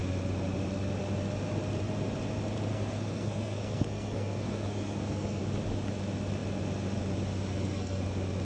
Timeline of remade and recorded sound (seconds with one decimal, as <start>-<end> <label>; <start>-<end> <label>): 0.0-2.7 recorded; 2.7-5.4 remade; 5.4-7.5 recorded; 7.5-8.0 remade; 8.0-8.4 recorded